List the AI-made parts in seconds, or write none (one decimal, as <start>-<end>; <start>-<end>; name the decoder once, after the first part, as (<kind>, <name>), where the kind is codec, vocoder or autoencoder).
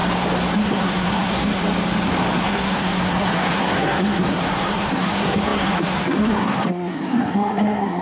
0.6-1.6 (codec, SNAC); 2.4-8.0